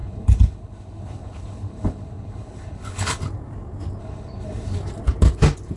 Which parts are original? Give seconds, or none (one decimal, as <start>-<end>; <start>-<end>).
3.2-4.0; 4.8-5.8